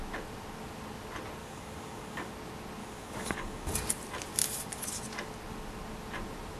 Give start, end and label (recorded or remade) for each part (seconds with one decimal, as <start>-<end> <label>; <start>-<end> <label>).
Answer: 0.0-1.4 recorded; 1.4-2.3 remade; 2.3-2.8 recorded; 2.8-3.7 remade; 3.7-6.6 recorded